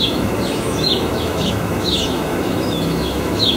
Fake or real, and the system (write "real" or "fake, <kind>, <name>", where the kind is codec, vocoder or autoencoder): fake, autoencoder, DAC-VAE